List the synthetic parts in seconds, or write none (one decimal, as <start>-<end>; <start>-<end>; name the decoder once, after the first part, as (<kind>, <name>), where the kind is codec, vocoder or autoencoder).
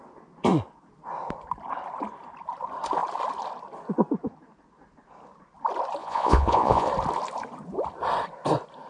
6.0-6.9 (vocoder, Vocos)